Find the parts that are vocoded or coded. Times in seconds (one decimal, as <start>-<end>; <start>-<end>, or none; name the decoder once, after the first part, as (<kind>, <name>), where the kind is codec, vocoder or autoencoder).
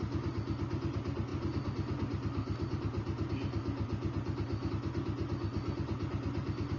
none